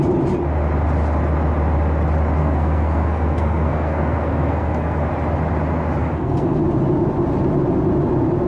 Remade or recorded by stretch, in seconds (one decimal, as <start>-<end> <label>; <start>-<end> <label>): 0.0-2.4 recorded; 2.4-5.0 remade; 5.0-6.0 recorded; 6.0-6.6 remade; 6.6-8.5 recorded